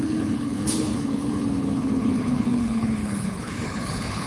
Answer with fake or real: fake